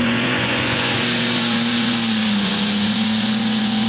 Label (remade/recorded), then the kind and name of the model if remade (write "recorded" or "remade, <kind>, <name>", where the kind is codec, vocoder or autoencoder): remade, vocoder, Vocos